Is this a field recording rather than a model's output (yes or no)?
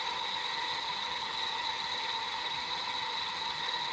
no